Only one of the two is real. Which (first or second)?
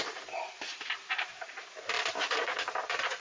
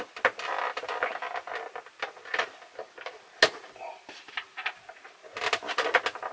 second